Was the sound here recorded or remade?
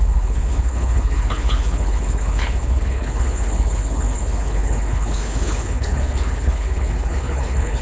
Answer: remade